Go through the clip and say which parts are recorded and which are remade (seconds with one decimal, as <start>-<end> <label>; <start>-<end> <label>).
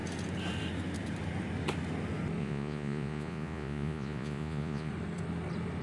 0.0-2.4 recorded; 2.4-4.9 remade; 4.9-5.8 recorded